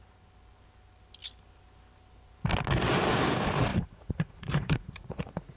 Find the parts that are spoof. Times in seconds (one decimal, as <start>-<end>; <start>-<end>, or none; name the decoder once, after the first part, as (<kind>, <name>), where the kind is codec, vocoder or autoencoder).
3.7-5.6 (vocoder, Vocos)